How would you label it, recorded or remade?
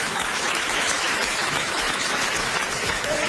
remade